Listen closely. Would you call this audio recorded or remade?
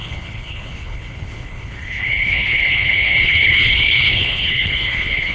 remade